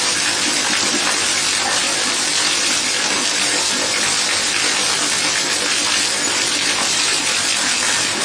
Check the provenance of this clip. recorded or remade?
recorded